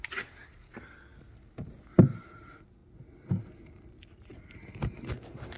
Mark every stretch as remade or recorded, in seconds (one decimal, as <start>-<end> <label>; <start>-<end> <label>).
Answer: 0.0-5.6 recorded